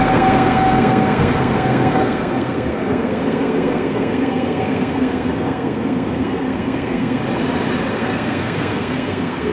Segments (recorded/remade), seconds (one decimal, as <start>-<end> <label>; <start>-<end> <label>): 0.0-7.2 remade; 7.2-7.9 recorded; 7.9-9.5 remade